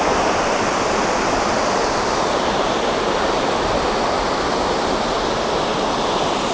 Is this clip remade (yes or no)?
no